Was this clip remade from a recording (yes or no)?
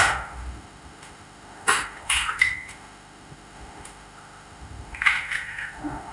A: yes